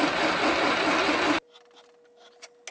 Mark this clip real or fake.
real